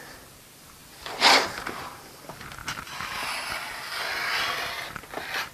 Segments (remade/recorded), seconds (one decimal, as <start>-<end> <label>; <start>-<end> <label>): 0.0-0.8 recorded; 0.8-1.9 remade; 1.9-5.5 recorded

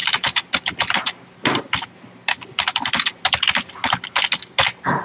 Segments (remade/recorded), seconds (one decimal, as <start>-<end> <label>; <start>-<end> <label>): 0.0-5.0 recorded

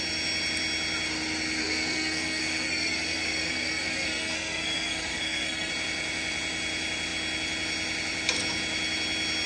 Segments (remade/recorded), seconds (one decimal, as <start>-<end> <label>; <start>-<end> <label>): 0.0-1.6 recorded; 1.6-5.7 remade; 5.7-9.5 recorded

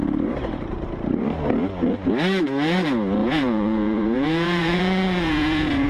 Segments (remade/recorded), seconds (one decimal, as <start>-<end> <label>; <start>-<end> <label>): 0.0-3.2 recorded; 3.2-5.9 remade

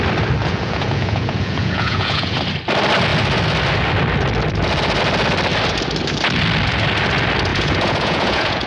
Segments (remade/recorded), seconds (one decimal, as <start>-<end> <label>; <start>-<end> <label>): 0.0-0.4 recorded; 0.4-2.4 remade; 2.4-7.5 recorded; 7.5-8.7 remade

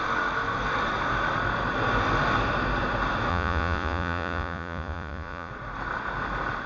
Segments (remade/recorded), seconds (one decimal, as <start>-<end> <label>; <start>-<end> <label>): 0.0-3.3 recorded; 3.3-5.5 remade; 5.5-6.7 recorded